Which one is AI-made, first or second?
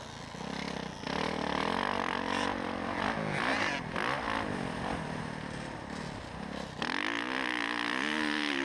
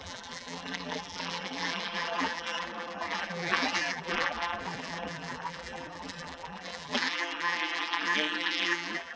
second